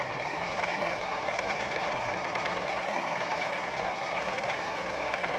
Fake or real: fake